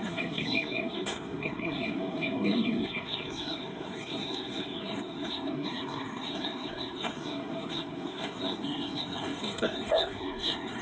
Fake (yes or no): yes